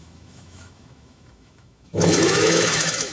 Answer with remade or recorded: remade